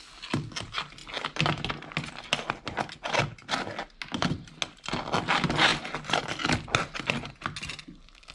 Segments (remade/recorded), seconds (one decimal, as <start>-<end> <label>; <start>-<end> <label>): 0.0-8.3 recorded